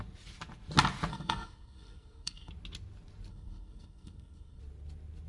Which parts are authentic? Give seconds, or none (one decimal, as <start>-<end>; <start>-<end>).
0.0-1.1; 2.5-3.3; 4.6-5.3